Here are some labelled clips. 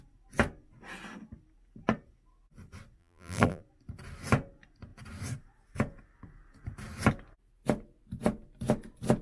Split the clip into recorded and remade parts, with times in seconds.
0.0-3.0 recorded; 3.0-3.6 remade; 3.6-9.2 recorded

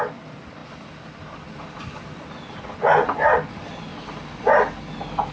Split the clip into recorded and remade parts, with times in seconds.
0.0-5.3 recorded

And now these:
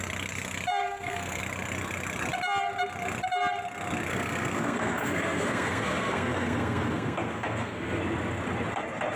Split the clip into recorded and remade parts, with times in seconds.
0.0-0.8 recorded; 0.8-1.4 remade; 1.4-4.1 recorded; 4.1-8.0 remade; 8.0-9.2 recorded

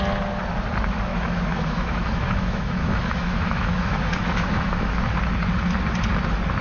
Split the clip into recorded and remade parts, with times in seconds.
0.0-1.1 recorded; 1.1-4.9 remade; 4.9-6.6 recorded

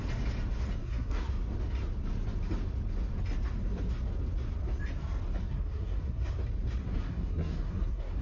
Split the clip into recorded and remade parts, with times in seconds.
0.0-0.8 recorded; 0.8-1.3 remade; 1.3-5.5 recorded; 5.5-6.3 remade; 6.3-6.8 recorded; 6.8-8.2 remade

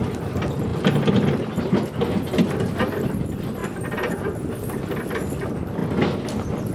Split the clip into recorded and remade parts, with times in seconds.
0.0-3.6 remade; 3.6-4.1 recorded; 4.1-5.8 remade; 5.8-6.3 recorded; 6.3-6.7 remade

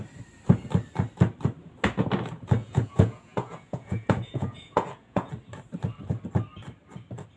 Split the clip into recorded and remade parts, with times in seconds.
0.0-2.6 recorded; 2.6-5.3 remade; 5.3-7.4 recorded

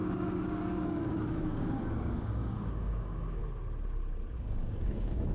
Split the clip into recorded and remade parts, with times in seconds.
0.0-3.4 remade; 3.4-4.3 recorded; 4.3-5.3 remade